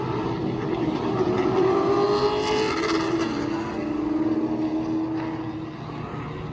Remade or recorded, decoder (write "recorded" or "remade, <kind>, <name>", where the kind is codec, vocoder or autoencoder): recorded